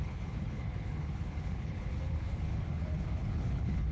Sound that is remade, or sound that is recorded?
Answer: remade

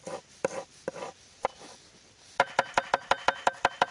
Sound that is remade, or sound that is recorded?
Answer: recorded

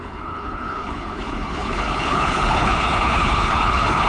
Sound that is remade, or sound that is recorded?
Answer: remade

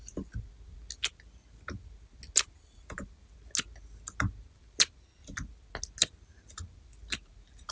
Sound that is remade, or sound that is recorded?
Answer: recorded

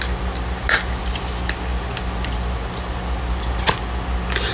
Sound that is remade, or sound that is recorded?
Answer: recorded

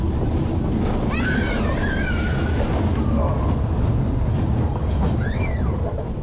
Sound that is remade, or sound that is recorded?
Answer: recorded